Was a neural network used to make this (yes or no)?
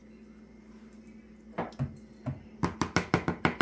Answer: no